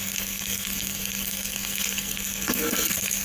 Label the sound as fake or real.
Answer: fake